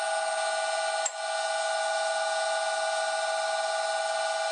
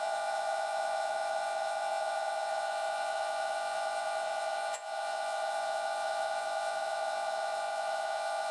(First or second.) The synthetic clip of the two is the second